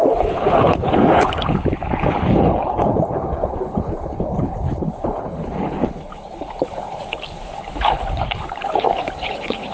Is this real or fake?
fake